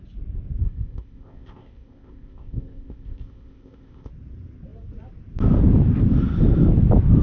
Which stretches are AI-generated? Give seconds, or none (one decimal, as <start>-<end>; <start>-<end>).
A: 0.6-4.1